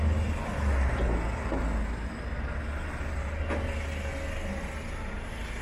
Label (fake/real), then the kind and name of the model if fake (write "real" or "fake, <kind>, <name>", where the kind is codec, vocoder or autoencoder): real